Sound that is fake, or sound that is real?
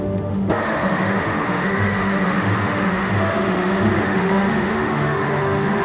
fake